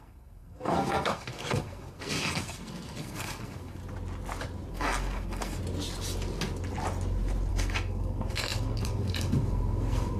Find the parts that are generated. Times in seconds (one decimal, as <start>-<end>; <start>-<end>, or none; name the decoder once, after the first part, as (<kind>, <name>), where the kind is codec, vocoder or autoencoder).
0.0-3.8 (codec, SNAC); 4.7-5.6; 7.5-10.2